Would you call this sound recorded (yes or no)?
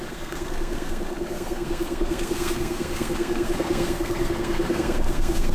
no